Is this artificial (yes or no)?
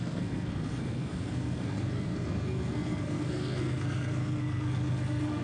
yes